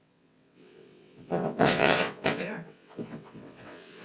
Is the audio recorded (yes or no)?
no